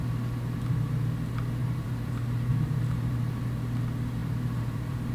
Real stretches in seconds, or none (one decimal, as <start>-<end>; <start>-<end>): 0.0-1.6; 3.4-4.2